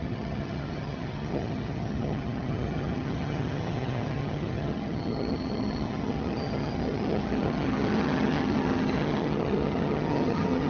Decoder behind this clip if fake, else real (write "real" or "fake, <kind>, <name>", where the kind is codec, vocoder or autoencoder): fake, vocoder, HiFi-GAN